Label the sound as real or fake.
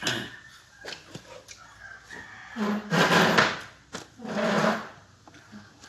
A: real